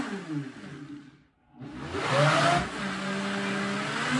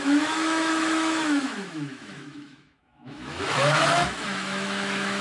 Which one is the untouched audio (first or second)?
first